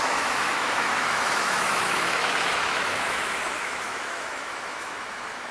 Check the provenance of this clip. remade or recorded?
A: remade